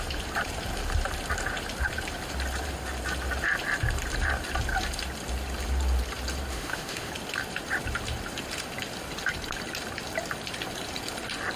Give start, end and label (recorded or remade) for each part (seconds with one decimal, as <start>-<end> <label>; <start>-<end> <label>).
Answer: 0.0-6.5 recorded; 6.5-7.1 remade; 7.1-11.6 recorded